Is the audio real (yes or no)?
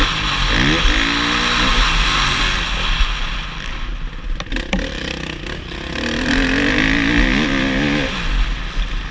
yes